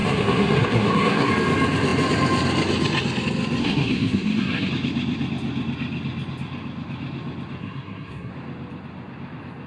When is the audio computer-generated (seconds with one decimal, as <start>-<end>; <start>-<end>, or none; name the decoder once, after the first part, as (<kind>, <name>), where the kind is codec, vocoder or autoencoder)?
0.0-1.3 (codec, SNAC); 3.6-4.7; 7.6-8.3